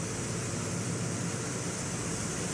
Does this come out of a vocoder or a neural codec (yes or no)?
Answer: no